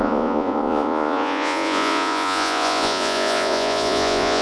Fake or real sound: fake